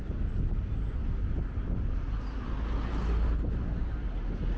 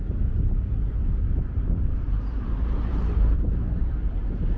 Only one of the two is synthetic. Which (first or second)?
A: second